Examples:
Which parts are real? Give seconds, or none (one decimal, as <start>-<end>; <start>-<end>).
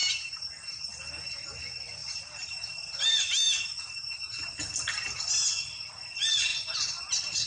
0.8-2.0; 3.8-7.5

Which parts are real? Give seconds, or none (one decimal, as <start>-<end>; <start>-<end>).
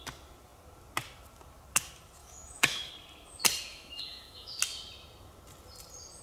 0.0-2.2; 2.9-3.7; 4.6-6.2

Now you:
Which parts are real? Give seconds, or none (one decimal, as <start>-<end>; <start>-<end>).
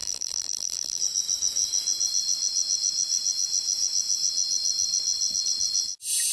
1.0-6.3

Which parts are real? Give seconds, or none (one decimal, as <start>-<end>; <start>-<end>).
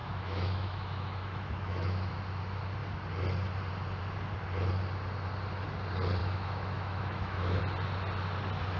2.1-6.2; 7.6-8.8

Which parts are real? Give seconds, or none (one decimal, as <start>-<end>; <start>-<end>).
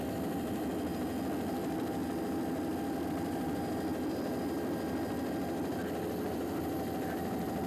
0.7-2.3; 5.8-6.3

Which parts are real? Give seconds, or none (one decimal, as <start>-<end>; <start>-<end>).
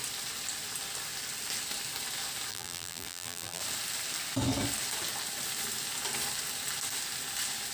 0.0-2.5; 3.6-7.7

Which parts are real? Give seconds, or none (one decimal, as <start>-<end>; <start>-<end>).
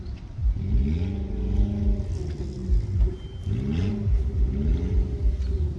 0.0-5.8